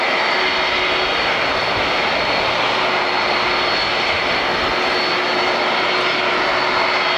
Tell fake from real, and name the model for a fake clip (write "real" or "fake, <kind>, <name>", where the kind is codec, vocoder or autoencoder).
real